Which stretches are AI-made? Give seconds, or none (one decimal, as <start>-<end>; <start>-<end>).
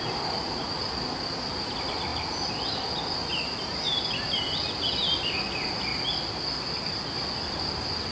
none